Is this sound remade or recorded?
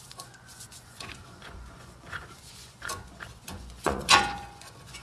remade